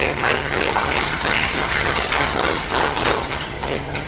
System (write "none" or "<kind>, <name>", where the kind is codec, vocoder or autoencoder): vocoder, HiFi-GAN